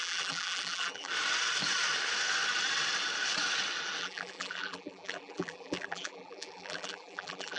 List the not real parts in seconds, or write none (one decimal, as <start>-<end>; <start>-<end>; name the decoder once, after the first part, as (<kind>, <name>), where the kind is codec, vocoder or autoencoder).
0.0-1.1 (vocoder, BigVGAN v2); 4.0-7.6